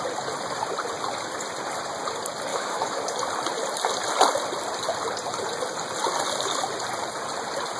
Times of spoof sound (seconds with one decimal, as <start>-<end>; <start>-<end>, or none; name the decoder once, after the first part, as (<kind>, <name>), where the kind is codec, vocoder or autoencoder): 2.5-3.0 (autoencoder, DAC-VAE)